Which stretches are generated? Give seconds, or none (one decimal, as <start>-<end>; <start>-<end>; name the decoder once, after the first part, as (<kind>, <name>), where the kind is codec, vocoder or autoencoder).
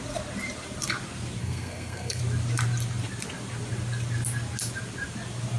1.4-2.2 (codec, SNAC)